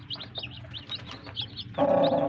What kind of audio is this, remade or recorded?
recorded